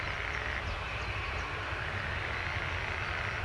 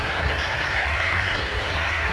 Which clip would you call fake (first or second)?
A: second